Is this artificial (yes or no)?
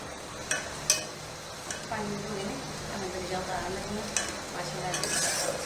no